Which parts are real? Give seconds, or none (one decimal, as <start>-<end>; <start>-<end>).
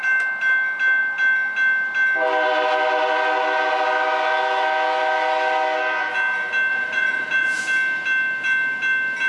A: 0.0-6.7; 7.6-9.3